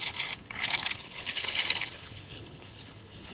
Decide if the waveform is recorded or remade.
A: remade